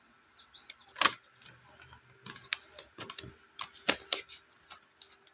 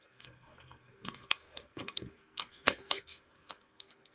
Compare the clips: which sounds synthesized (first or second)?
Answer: second